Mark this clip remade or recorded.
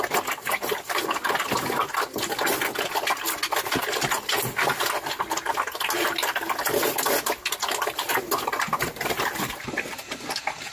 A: recorded